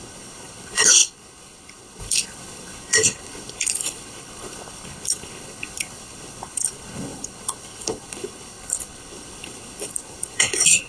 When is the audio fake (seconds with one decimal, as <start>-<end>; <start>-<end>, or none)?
0.0-10.9